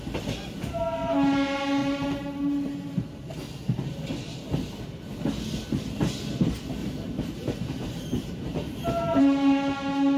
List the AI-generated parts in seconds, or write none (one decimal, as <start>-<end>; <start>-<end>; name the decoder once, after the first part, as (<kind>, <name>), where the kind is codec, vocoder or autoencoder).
1.8-3.4 (vocoder, BigVGAN v2); 6.8-9.2